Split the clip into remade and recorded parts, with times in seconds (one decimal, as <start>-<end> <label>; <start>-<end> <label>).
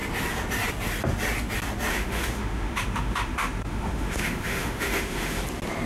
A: 0.0-1.9 recorded; 1.9-5.4 remade; 5.4-5.9 recorded